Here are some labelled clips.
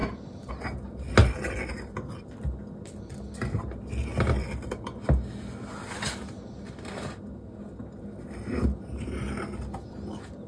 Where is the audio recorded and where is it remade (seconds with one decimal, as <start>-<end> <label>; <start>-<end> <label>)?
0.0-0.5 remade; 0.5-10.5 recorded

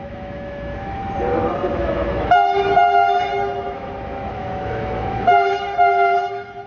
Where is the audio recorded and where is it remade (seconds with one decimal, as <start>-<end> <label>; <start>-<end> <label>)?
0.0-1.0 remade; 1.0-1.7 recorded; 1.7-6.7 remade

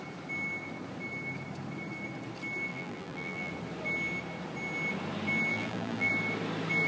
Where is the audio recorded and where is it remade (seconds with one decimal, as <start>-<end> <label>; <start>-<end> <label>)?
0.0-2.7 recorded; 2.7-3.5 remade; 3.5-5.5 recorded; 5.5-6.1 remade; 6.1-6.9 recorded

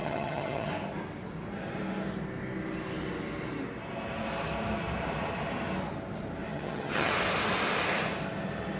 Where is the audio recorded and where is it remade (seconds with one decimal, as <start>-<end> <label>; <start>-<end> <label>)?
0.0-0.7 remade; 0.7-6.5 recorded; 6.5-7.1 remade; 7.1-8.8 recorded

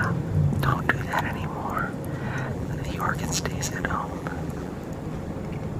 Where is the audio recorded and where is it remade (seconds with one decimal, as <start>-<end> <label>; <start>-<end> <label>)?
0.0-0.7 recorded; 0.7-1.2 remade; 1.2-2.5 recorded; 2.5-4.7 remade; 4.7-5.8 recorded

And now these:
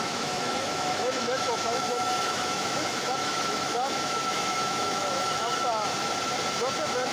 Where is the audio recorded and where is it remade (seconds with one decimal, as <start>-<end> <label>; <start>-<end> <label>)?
0.0-5.5 remade; 5.5-7.1 recorded

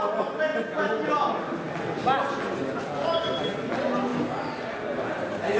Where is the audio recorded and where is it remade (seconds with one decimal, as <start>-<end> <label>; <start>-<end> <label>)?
0.0-5.6 recorded

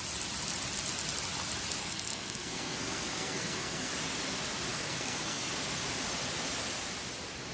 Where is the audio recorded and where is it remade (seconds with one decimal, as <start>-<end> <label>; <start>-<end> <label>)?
0.0-1.8 recorded; 1.8-3.9 remade; 3.9-4.7 recorded; 4.7-5.5 remade; 5.5-7.5 recorded